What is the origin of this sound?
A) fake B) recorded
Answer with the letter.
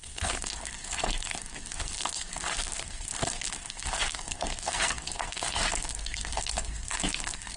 A